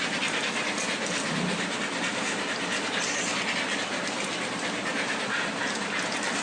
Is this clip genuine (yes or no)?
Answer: yes